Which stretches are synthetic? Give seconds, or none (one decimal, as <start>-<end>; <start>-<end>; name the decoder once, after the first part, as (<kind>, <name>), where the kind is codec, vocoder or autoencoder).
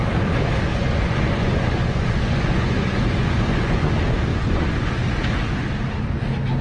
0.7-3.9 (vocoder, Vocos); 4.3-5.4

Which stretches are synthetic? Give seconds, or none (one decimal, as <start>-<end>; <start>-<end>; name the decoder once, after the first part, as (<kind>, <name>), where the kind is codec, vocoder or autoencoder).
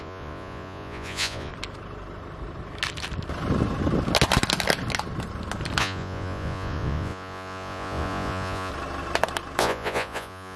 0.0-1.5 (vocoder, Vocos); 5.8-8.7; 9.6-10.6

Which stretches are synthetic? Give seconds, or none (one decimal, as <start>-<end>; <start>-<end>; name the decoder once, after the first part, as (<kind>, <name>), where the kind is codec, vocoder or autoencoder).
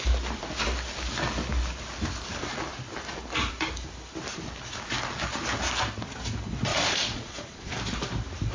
6.7-7.8 (vocoder, Vocos)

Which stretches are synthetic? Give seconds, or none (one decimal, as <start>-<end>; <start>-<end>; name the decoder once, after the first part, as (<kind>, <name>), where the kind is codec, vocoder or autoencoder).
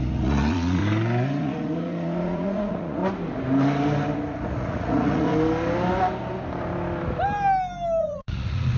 0.0-0.8 (vocoder, Vocos); 1.4-3.0; 4.5-5.3; 8.0-8.8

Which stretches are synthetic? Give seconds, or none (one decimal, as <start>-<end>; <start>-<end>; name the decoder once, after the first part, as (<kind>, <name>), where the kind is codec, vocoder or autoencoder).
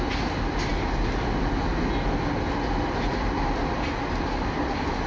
none